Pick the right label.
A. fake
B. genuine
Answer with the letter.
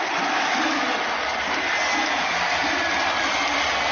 B